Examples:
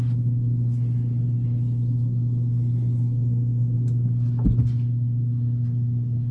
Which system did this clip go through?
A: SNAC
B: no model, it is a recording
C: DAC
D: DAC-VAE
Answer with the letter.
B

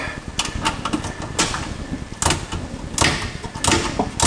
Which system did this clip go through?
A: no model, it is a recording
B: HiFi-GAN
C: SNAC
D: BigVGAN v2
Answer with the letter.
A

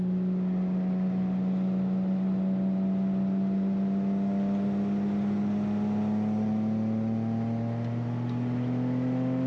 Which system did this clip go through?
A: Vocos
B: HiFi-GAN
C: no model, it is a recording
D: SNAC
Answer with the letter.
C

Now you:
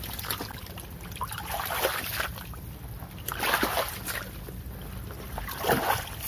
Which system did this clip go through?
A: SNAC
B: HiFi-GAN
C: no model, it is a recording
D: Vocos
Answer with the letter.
C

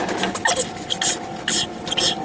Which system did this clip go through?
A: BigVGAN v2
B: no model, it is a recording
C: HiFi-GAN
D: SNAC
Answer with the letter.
B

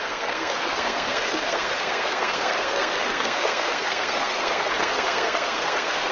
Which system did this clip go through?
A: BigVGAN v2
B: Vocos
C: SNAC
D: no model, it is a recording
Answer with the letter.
C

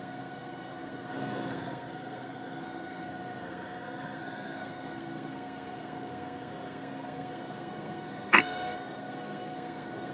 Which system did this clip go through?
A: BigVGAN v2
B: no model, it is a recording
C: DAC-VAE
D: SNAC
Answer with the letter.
D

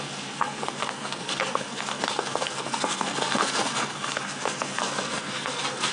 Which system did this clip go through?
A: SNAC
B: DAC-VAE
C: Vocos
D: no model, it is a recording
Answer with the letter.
A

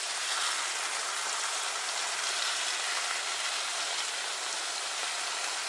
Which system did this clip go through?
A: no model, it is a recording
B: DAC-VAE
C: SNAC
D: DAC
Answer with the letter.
A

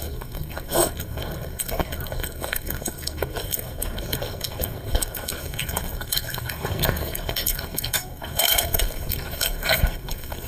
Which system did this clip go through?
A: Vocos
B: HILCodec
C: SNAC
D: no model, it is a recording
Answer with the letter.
C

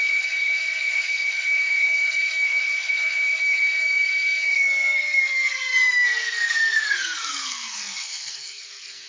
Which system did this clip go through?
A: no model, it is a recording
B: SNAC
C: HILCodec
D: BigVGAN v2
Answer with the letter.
B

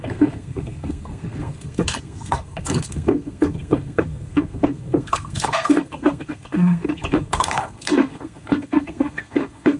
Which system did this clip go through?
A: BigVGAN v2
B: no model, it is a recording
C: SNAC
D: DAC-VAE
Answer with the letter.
C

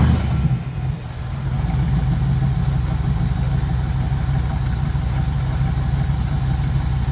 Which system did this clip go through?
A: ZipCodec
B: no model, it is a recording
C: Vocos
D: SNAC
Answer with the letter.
B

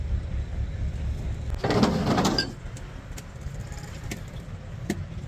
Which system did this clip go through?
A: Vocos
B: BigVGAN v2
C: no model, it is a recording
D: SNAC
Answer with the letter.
C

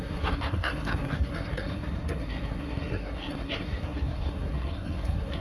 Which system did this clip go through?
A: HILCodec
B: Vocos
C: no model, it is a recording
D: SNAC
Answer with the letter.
D